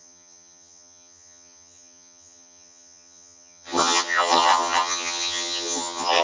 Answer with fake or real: fake